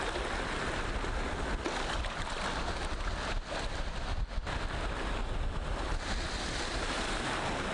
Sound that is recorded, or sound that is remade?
recorded